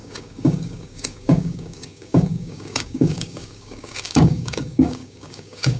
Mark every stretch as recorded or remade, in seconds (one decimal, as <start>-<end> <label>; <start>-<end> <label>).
0.0-5.8 remade